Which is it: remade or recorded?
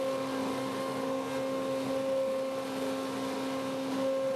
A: recorded